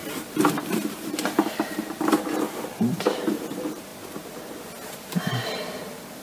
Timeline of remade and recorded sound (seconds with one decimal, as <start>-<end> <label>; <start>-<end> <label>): 0.0-3.9 remade; 3.9-4.9 recorded; 4.9-6.2 remade